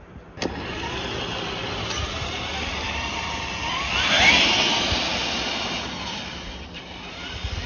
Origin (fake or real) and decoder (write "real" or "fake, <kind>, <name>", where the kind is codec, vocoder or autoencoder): real